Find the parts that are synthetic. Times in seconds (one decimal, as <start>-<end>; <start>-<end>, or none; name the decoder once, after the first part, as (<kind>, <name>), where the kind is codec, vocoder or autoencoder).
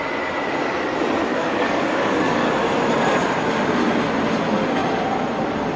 1.3-2.5 (codec, DAC)